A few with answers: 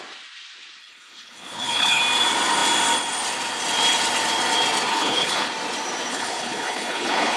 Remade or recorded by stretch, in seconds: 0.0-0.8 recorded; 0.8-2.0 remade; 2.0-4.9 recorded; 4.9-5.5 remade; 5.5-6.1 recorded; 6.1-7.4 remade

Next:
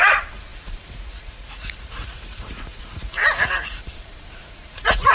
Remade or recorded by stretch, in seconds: 0.0-5.1 remade

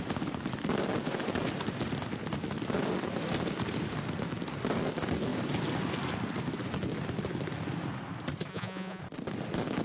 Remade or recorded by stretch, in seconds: 0.0-8.5 recorded; 8.5-9.0 remade; 9.0-9.8 recorded

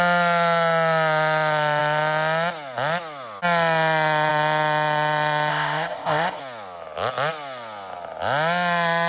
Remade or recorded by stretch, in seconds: 0.0-5.5 recorded; 5.5-6.4 remade; 6.4-9.1 recorded

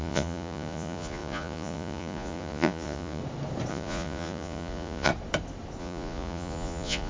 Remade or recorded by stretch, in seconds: 0.0-3.2 remade; 3.2-3.7 recorded; 3.7-5.1 remade; 5.1-5.8 recorded; 5.8-7.1 remade

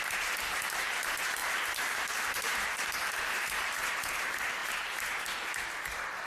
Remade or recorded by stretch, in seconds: 0.0-1.4 recorded; 1.4-3.8 remade; 3.8-6.3 recorded